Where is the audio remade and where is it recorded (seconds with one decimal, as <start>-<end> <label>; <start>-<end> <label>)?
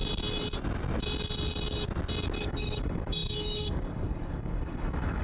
0.0-2.4 recorded; 2.4-5.2 remade